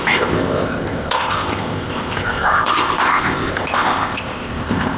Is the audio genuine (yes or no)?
no